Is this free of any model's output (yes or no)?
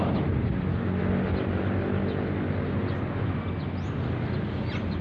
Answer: yes